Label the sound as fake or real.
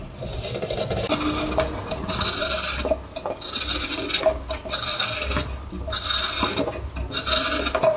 real